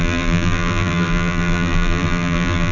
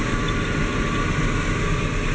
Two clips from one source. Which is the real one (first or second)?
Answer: second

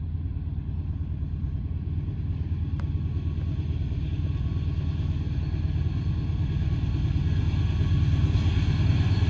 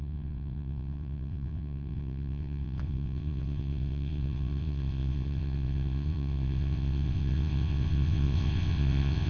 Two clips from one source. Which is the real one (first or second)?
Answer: first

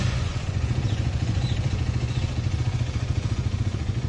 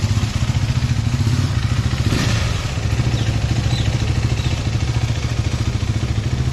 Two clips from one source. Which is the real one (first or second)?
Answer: second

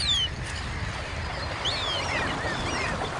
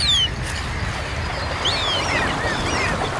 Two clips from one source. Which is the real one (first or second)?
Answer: second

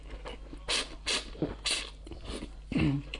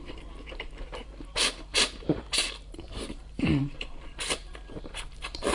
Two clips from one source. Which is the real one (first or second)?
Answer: first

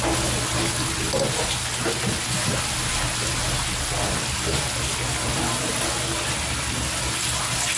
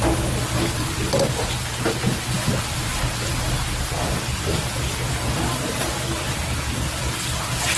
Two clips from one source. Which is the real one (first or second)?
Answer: first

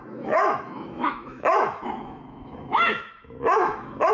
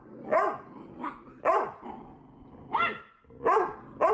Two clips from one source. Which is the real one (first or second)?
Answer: second